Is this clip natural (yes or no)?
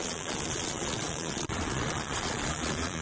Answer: no